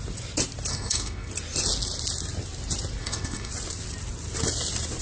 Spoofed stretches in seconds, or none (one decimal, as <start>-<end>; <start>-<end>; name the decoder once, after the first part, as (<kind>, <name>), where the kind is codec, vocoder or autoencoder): 0.7-1.3 (codec, SNAC); 3.0-3.5